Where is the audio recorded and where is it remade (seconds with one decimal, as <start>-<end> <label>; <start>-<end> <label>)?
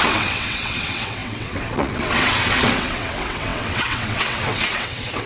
0.0-5.3 remade